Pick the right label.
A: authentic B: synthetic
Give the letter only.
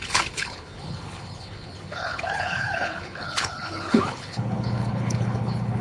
B